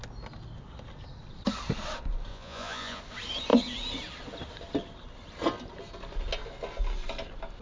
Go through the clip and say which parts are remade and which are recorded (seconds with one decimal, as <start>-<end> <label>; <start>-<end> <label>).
0.0-2.3 recorded; 2.3-3.0 remade; 3.0-7.6 recorded